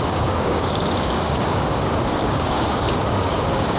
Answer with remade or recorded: remade